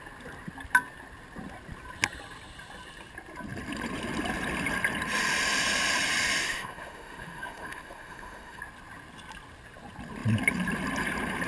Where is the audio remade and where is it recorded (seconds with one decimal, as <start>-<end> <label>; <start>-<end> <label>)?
0.0-6.4 recorded; 6.4-8.6 remade; 8.6-11.5 recorded